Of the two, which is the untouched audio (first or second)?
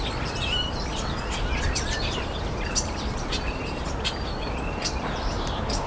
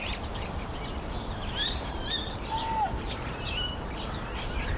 first